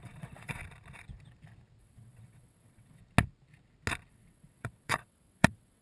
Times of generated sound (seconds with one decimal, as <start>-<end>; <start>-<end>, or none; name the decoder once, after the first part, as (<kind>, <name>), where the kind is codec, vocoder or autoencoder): 0.0-0.6 (vocoder, WaveNeXt); 1.8-3.0; 4.1-5.8